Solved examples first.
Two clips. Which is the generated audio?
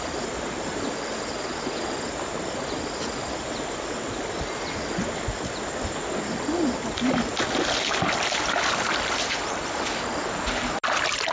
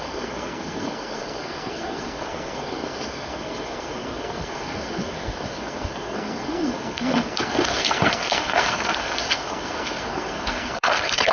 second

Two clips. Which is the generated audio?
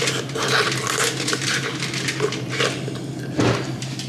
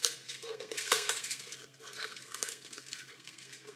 second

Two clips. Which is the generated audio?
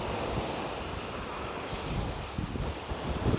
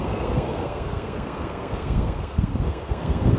second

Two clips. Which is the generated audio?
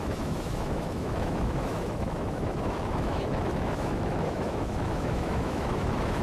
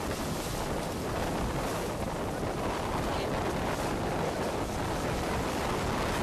first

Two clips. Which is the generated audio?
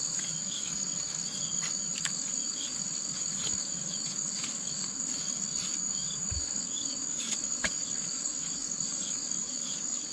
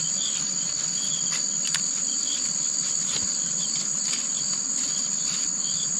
first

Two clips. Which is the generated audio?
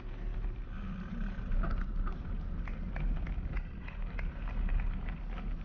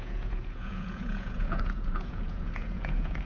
second